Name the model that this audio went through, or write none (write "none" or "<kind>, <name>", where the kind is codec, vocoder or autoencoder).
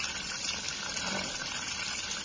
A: none